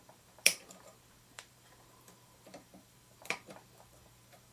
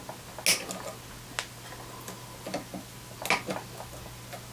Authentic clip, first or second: second